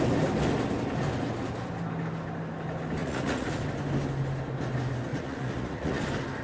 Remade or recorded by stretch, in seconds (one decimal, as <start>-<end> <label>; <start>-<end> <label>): 0.0-3.0 recorded; 3.0-3.6 remade; 3.6-5.1 recorded; 5.1-6.0 remade; 6.0-6.4 recorded